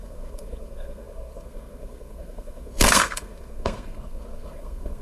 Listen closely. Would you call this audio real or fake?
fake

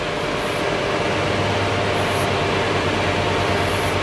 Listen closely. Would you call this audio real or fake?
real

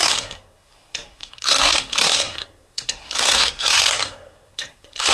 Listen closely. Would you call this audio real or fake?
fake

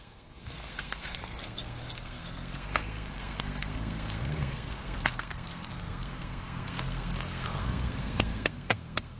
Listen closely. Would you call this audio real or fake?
fake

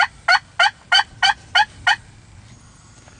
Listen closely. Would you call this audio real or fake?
real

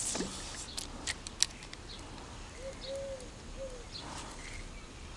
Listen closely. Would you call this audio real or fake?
real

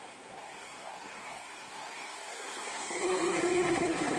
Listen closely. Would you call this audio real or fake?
fake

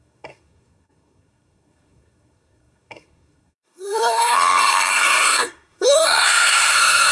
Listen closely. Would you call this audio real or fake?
fake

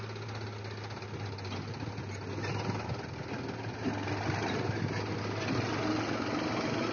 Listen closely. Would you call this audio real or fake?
real